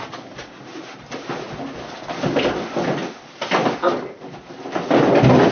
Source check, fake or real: real